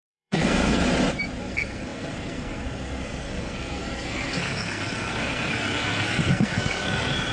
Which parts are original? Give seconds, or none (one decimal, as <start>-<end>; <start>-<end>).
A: 0.8-1.4